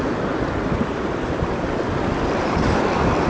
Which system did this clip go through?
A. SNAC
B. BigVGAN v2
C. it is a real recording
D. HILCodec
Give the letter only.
B